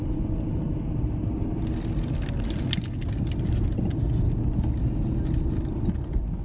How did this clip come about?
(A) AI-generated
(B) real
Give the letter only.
B